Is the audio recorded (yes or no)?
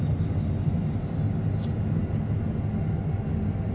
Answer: yes